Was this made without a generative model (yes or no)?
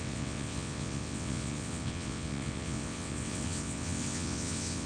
no